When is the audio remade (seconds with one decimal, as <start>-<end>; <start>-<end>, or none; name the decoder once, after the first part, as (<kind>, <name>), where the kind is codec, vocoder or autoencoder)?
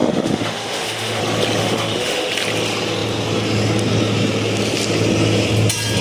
0.0-1.2 (autoencoder, DAC-VAE); 1.6-2.3